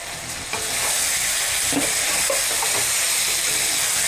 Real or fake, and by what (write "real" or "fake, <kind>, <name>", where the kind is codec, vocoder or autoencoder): real